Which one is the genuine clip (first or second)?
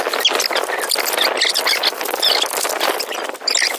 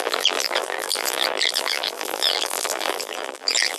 first